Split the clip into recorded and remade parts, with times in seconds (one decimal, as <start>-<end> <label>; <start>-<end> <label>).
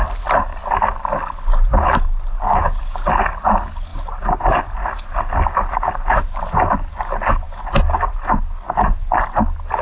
0.0-9.8 recorded